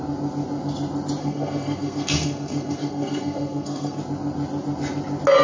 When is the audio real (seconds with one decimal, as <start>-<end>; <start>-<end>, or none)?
0.0-1.2; 4.0-5.4